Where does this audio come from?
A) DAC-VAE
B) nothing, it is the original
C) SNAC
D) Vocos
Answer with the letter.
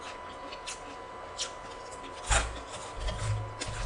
B